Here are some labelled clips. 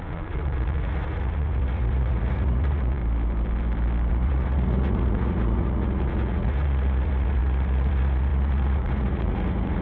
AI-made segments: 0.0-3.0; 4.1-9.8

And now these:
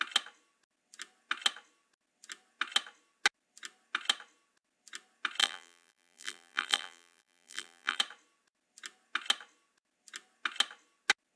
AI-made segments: 5.4-8.0

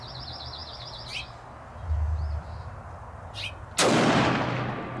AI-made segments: none

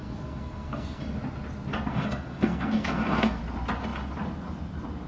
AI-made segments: 0.0-1.0; 1.9-3.4

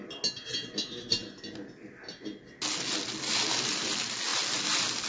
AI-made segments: none

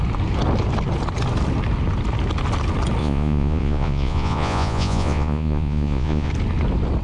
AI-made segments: 3.0-6.3